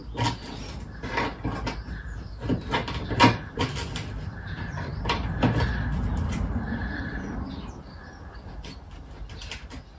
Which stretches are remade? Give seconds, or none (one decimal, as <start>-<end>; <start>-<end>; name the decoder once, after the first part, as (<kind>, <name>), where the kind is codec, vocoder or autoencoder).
2.5-6.8 (vocoder, BigVGAN v2)